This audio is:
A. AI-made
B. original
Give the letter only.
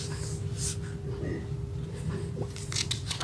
B